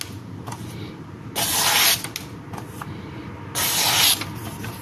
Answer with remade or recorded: recorded